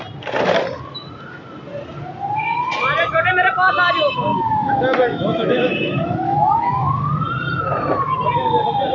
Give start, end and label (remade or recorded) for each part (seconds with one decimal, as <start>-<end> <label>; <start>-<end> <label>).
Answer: 0.0-4.3 recorded; 4.3-7.1 remade; 7.1-8.9 recorded